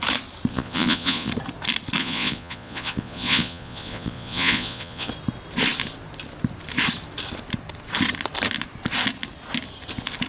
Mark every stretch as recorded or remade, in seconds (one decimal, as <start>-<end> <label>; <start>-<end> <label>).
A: 0.0-0.5 recorded; 0.5-1.3 remade; 1.3-2.0 recorded; 2.0-5.1 remade; 5.1-10.3 recorded